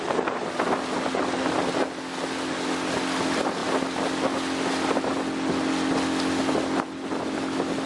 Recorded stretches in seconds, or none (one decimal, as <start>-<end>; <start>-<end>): 0.0-7.9